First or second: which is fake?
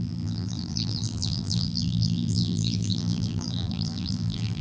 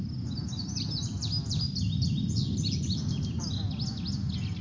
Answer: first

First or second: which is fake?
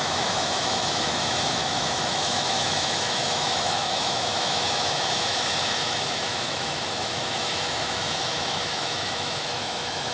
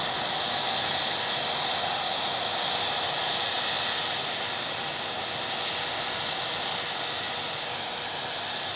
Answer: first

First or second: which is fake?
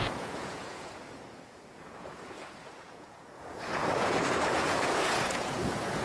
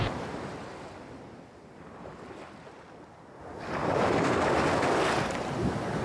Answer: first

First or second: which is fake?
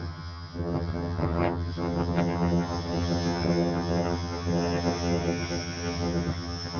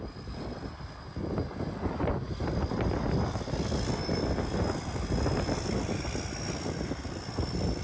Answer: first